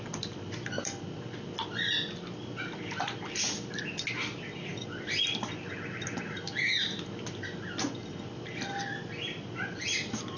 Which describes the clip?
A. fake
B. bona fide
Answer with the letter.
A